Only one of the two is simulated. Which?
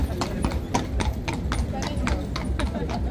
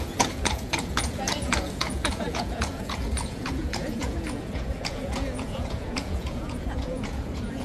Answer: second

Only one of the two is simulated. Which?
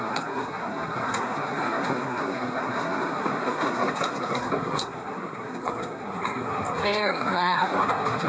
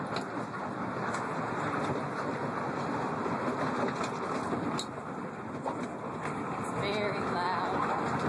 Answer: first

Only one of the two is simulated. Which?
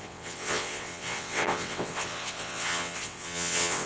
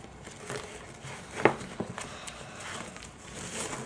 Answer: first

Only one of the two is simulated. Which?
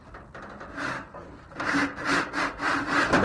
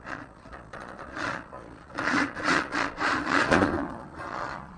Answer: second